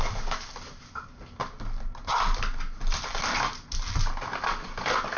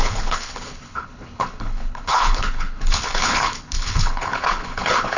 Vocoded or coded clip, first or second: second